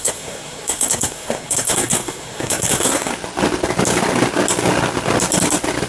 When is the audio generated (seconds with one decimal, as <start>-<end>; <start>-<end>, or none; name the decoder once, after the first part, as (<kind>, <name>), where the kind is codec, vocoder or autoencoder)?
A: 0.0-3.1 (codec, SNAC)

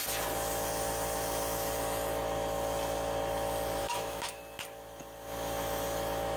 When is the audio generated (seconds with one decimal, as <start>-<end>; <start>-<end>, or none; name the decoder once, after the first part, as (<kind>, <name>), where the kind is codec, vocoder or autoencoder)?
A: 3.8-4.4 (autoencoder, DAC-VAE)

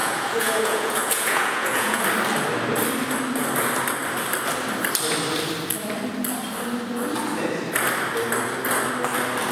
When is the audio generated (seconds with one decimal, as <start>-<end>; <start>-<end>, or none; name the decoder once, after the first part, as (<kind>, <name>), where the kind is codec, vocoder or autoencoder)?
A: 0.0-2.0 (vocoder, Vocos)

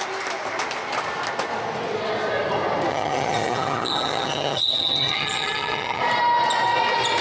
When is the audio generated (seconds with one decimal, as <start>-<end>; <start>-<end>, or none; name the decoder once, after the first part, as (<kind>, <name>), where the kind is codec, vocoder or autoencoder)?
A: 2.9-6.0 (vocoder, HiFi-GAN)

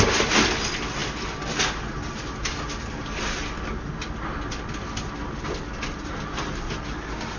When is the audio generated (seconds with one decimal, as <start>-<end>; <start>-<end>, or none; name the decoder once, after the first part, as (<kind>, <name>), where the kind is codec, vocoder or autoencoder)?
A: none

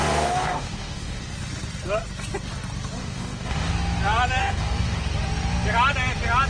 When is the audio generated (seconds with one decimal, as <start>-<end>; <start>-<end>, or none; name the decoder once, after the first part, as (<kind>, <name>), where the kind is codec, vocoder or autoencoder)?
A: 0.0-1.2 (codec, DAC); 3.0-3.7; 4.4-5.0